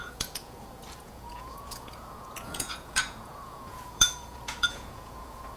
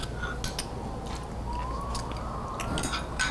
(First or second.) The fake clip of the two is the first